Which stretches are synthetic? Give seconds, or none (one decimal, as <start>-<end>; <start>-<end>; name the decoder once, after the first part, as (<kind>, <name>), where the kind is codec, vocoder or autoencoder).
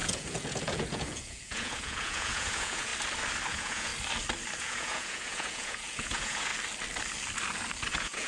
0.0-2.9 (vocoder, Vocos); 3.5-3.9; 4.6-6.5; 7.9-8.3